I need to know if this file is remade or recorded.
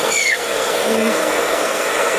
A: remade